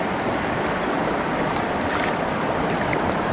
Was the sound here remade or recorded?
recorded